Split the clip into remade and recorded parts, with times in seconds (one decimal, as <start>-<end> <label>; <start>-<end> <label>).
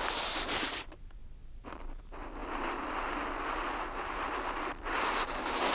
0.0-5.7 recorded